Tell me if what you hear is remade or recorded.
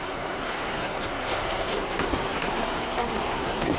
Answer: remade